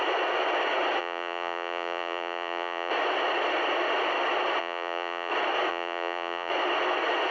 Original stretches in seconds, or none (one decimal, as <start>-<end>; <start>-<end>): 0.0-1.0; 2.9-4.6; 5.3-5.7; 6.5-7.3